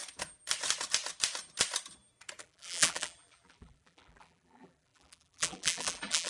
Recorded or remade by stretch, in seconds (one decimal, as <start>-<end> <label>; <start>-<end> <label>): 0.0-2.4 recorded; 2.4-6.3 remade